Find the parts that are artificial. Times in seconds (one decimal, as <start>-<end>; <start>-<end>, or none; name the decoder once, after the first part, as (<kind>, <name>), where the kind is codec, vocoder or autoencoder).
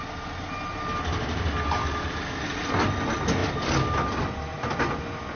none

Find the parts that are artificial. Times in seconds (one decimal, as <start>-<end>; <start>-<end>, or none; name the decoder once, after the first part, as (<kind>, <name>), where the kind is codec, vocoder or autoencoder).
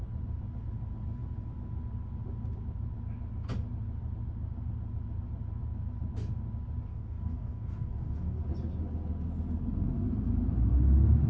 6.9-8.4 (codec, DAC)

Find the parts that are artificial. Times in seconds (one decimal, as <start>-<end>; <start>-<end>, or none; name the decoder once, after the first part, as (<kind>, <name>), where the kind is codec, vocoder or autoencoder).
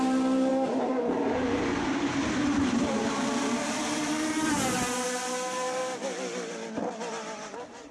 0.0-5.8 (vocoder, BigVGAN v2); 7.1-7.9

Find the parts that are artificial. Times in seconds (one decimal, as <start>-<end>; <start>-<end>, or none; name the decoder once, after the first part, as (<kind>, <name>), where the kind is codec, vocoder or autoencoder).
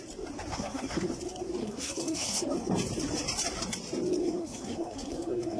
0.5-1.1 (codec, SNAC); 1.6-2.4; 4.2-5.6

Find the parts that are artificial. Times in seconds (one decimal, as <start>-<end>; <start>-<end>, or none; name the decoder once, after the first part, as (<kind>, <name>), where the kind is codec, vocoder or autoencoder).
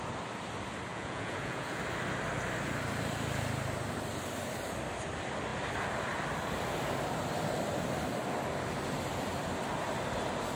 0.9-1.8 (vocoder, Vocos)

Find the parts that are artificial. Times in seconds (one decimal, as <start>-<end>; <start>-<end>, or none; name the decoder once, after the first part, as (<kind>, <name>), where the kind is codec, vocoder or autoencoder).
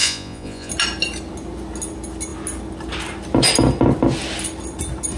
0.0-0.7 (vocoder, Vocos)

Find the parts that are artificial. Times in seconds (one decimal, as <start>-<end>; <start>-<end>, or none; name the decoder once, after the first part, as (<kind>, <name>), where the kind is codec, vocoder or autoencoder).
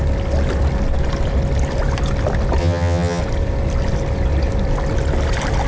2.6-3.2 (vocoder, HiFi-GAN)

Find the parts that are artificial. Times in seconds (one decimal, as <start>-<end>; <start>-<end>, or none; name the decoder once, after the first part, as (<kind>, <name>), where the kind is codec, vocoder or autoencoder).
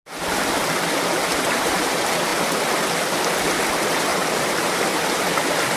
1.3-1.9 (vocoder, BigVGAN v2); 4.1-4.9